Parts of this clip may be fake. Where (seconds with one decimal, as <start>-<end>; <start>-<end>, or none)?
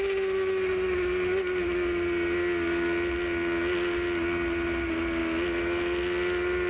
none